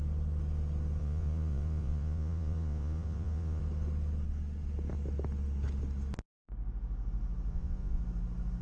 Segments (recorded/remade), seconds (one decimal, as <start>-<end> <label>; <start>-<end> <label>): 0.0-1.0 recorded; 1.0-3.6 remade; 3.6-7.5 recorded; 7.5-8.0 remade; 8.0-8.6 recorded